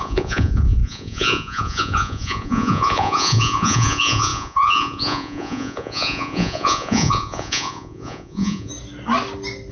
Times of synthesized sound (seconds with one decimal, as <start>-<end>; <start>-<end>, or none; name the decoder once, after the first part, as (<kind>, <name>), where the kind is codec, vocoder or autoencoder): 0.0-8.7 (vocoder, Vocos)